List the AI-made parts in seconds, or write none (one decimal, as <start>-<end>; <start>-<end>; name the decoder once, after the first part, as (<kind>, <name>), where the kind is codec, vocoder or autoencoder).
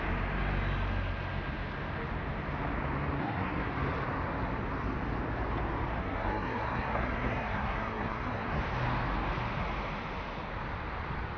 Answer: 3.2-3.7 (codec, SNAC); 6.0-8.6